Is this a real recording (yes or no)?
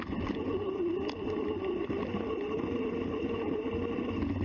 no